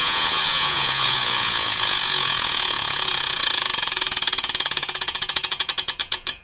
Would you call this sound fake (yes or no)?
yes